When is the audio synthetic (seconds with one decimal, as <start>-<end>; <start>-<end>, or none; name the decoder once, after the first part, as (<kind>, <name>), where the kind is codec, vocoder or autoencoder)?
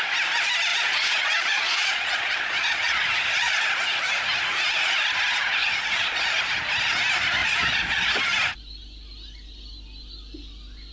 0.7-3.6 (vocoder, Vocos); 5.6-6.4; 7.4-8.2